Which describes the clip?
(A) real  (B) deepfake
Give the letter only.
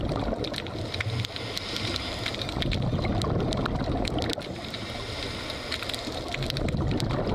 A